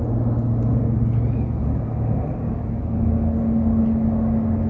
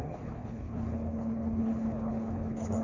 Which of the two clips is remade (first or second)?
second